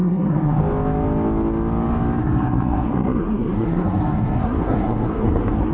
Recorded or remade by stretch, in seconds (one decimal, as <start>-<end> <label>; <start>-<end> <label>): 0.0-0.6 remade; 0.6-2.2 recorded; 2.2-5.7 remade